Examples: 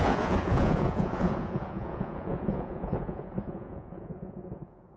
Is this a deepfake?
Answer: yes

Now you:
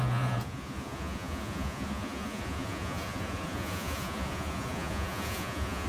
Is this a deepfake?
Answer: yes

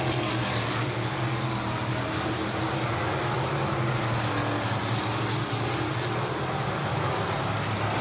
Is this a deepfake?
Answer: no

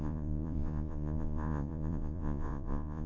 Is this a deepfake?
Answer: yes